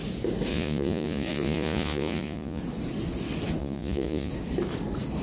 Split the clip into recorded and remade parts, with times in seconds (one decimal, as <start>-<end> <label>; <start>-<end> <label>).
0.0-0.5 recorded; 0.5-2.6 remade; 2.6-3.6 recorded; 3.6-4.3 remade; 4.3-5.2 recorded